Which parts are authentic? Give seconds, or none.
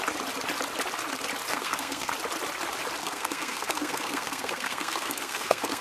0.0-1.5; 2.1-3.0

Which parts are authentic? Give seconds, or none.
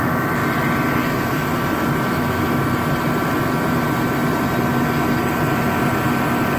0.4-2.0; 2.6-6.6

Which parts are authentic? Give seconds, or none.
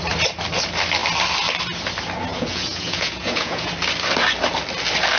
0.0-2.3; 3.7-5.2